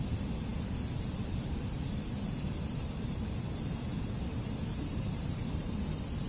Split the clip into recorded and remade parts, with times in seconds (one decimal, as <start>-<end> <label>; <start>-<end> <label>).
0.0-4.9 recorded; 4.9-5.7 remade; 5.7-6.3 recorded